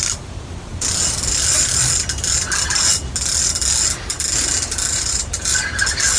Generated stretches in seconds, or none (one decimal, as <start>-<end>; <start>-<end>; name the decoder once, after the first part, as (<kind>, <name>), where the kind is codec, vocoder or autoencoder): none

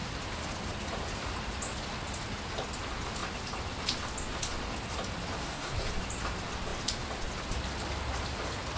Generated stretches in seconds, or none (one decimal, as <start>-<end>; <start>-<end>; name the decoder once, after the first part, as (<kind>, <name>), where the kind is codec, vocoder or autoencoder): 5.4-5.9 (codec, SNAC)

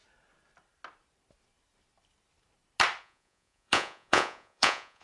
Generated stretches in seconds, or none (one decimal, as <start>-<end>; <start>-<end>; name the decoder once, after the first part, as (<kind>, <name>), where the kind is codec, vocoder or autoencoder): 3.0-5.0 (vocoder, Vocos)